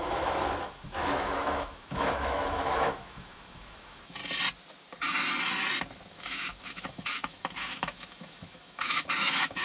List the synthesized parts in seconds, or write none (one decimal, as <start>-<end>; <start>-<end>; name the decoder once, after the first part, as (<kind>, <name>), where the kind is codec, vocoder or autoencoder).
0.0-4.2 (autoencoder, DAC-VAE); 6.1-9.6

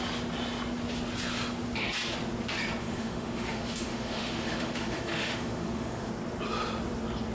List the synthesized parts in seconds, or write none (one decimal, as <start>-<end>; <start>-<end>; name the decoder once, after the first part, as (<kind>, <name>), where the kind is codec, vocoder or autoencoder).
2.8-6.1 (autoencoder, DAC-VAE)

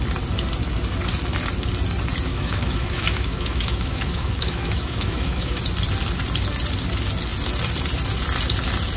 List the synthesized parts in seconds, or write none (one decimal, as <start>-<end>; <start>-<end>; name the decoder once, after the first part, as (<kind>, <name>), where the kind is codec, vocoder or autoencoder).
2.3-5.6 (autoencoder, DAC-VAE)